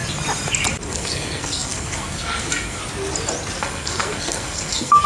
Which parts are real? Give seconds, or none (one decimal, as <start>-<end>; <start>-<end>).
0.0-0.9; 2.8-3.6